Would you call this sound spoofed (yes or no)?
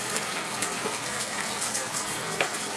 yes